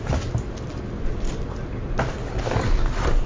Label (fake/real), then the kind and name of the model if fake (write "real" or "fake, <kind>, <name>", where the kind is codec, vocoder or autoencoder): real